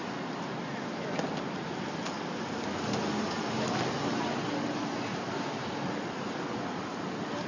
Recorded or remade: recorded